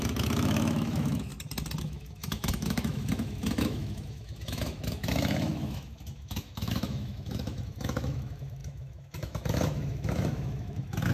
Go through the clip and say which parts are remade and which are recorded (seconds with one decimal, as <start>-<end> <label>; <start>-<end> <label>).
0.0-1.3 remade; 1.3-1.8 recorded; 1.8-11.1 remade